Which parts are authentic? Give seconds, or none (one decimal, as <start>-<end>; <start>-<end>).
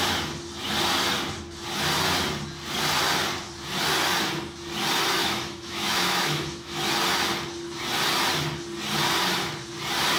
0.0-5.2; 6.8-10.2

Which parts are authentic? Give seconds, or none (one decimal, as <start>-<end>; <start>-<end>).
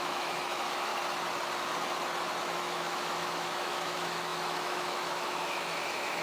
0.9-2.4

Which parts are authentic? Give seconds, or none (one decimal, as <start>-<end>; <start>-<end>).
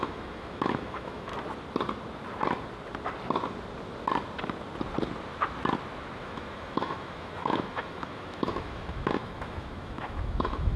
1.3-6.2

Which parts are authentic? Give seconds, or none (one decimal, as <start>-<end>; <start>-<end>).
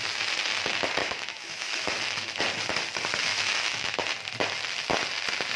0.0-1.0; 2.4-3.3; 4.0-5.6